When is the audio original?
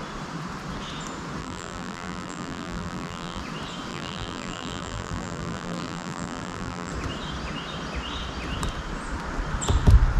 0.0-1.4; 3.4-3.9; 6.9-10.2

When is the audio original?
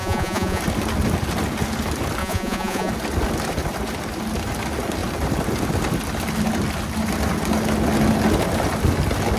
0.6-2.2; 2.9-9.4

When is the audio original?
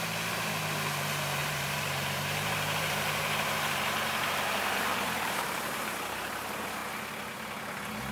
0.0-1.4; 6.3-8.1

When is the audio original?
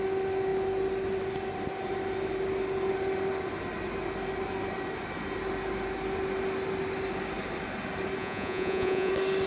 0.0-8.2; 9.1-9.5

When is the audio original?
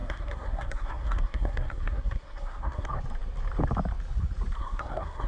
2.9-4.6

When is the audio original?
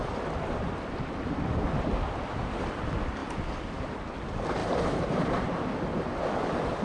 0.0-4.6; 5.4-6.8